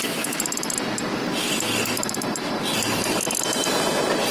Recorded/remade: recorded